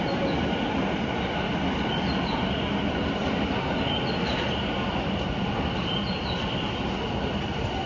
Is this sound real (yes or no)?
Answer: yes